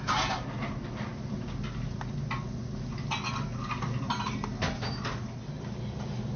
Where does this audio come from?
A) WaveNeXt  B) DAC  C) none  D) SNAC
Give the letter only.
C